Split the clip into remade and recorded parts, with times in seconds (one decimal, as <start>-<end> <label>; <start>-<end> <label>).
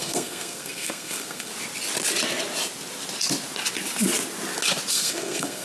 0.0-1.5 remade; 1.5-4.9 recorded; 4.9-5.6 remade